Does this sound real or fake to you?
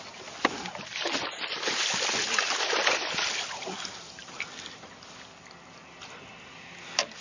real